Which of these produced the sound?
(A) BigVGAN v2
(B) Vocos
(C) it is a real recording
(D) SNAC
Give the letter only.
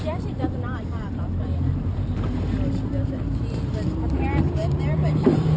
A